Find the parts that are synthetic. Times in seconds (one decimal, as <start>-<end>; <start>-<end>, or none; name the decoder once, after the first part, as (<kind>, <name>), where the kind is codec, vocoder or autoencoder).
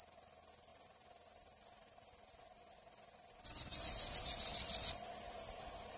none